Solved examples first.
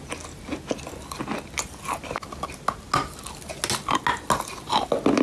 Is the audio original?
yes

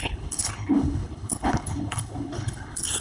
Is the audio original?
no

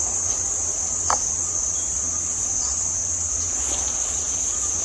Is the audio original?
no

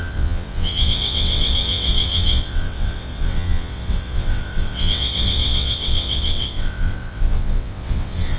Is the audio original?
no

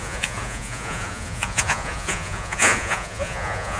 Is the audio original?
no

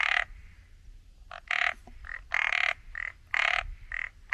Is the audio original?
yes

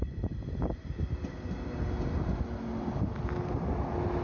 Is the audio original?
yes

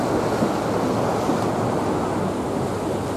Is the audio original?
yes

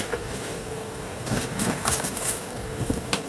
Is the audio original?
no